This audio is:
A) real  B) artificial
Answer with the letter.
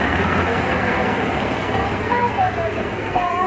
B